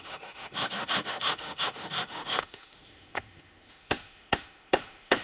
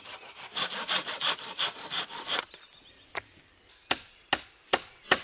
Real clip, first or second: second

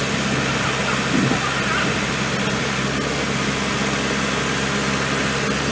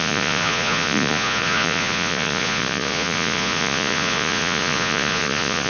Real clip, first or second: first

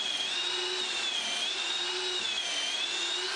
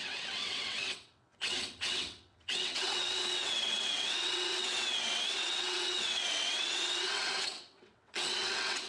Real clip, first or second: first